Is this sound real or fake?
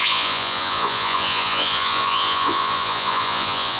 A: fake